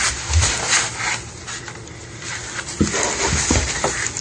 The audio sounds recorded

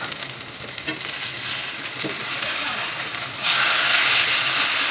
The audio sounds recorded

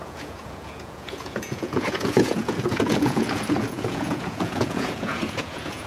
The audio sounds remade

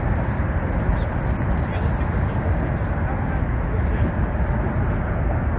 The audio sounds recorded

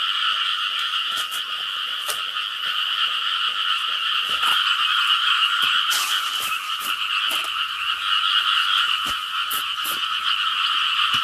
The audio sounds recorded